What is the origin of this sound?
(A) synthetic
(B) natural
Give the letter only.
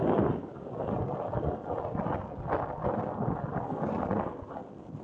B